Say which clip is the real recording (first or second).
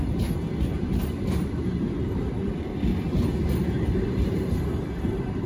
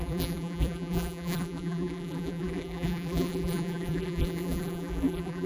first